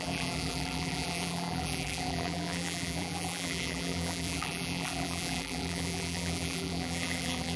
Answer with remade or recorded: remade